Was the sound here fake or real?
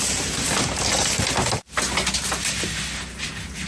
real